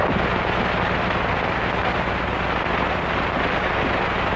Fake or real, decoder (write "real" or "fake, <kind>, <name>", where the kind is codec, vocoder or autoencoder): real